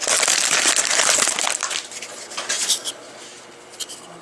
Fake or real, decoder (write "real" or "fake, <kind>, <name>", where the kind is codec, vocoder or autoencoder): real